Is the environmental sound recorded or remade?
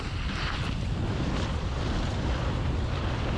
remade